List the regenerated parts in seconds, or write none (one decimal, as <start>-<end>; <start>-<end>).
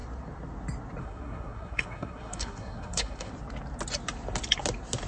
1.0-3.3